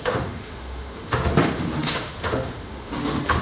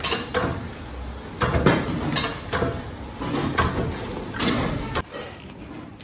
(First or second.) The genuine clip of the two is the second